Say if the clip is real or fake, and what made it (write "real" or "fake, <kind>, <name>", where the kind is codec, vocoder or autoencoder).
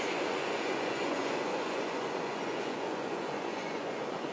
fake, vocoder, Vocos